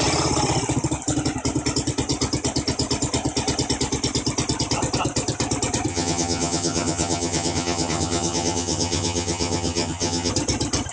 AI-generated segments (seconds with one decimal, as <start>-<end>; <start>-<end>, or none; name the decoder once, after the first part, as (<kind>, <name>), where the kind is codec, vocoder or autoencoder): 5.9-10.3 (vocoder, HiFi-GAN)